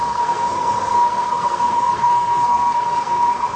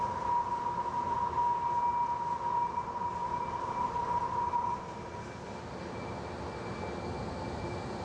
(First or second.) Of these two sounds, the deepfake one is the first